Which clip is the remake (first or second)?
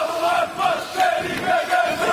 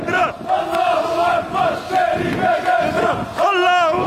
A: first